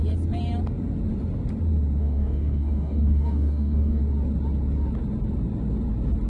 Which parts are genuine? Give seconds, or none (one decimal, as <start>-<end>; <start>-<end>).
0.0-2.0; 4.0-6.3